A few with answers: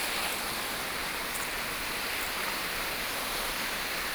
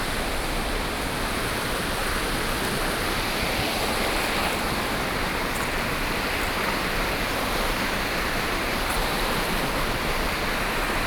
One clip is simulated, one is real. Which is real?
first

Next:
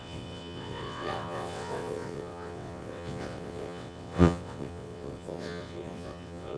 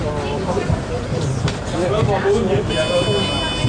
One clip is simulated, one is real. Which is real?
second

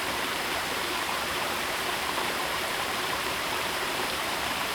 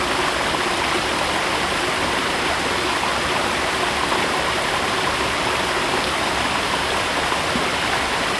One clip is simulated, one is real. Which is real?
second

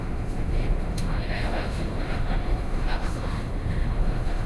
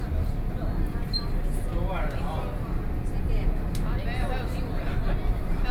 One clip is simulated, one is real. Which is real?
second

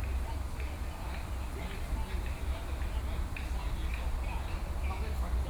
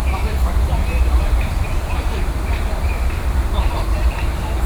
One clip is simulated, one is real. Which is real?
first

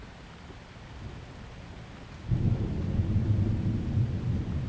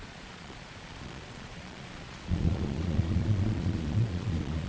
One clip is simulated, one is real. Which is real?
first